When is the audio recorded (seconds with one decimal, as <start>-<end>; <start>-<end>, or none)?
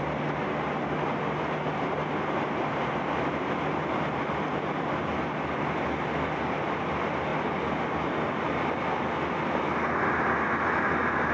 0.0-11.3